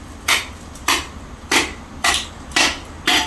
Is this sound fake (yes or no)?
no